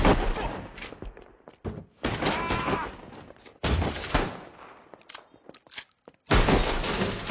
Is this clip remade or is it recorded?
recorded